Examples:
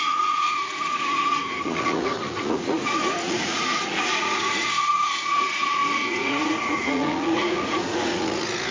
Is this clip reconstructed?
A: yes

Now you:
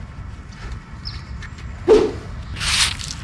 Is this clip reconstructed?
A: no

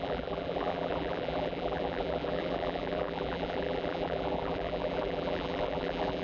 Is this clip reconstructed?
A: yes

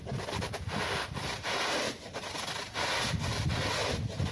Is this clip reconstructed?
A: no